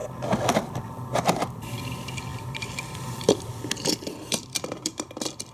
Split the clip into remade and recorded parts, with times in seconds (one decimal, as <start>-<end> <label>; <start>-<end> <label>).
0.0-2.3 recorded; 2.3-5.1 remade; 5.1-5.5 recorded